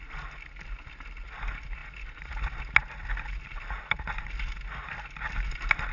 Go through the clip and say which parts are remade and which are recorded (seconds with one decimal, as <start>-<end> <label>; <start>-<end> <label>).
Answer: 0.0-5.9 recorded